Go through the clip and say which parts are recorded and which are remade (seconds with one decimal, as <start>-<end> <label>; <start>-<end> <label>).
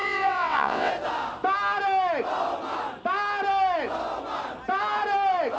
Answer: 0.0-0.9 remade; 0.9-5.6 recorded